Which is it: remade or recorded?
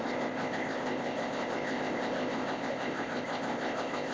remade